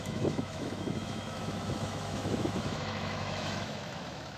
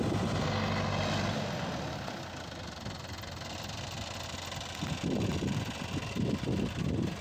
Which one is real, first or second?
second